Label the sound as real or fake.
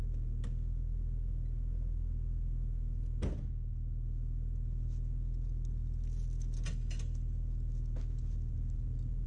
real